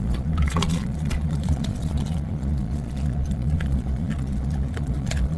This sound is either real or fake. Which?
fake